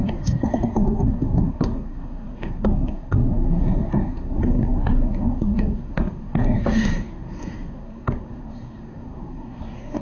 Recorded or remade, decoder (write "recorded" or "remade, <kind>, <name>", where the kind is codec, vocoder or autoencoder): remade, codec, SNAC